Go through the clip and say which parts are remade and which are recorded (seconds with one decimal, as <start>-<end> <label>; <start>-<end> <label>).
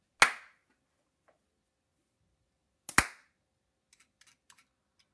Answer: 0.0-5.1 recorded